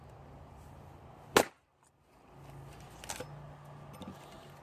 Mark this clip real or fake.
real